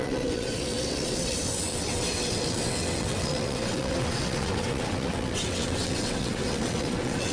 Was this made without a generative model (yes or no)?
no